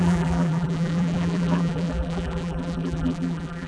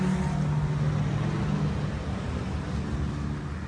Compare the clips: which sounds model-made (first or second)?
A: first